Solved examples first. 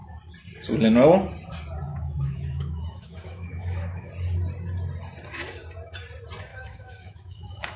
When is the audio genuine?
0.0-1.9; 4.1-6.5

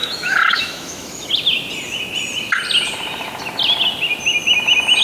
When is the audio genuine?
1.3-5.0

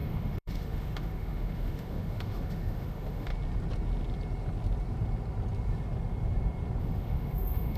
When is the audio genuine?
3.3-6.8

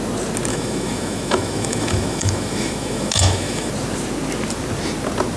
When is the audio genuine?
0.0-0.5; 3.7-5.4

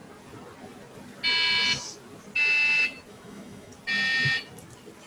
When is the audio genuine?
0.0-3.1; 3.7-5.1

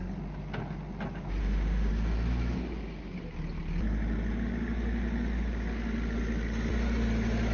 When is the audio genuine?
0.0-1.4; 1.9-7.5

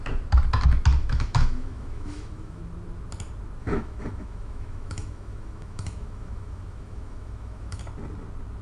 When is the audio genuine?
0.0-1.0; 2.6-3.6; 7.8-8.6

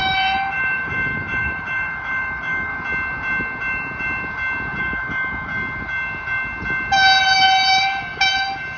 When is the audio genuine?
2.7-4.8; 5.5-8.8